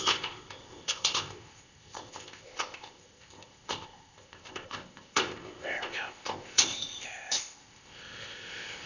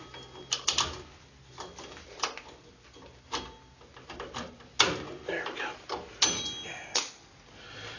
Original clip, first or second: second